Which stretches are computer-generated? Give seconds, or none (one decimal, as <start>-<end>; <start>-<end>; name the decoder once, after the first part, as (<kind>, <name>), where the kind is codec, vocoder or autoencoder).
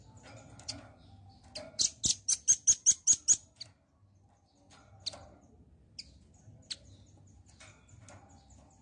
none